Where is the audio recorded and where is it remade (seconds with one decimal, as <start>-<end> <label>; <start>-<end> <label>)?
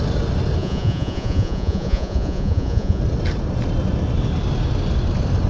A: 0.0-0.6 recorded; 0.6-3.0 remade; 3.0-5.5 recorded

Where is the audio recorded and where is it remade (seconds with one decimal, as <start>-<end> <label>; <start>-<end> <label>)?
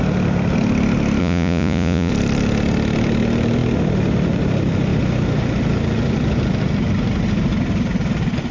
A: 0.0-1.2 recorded; 1.2-2.1 remade; 2.1-8.5 recorded